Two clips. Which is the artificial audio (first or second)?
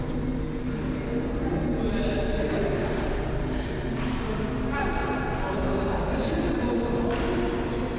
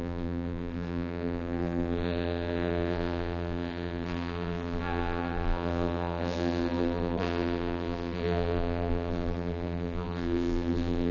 second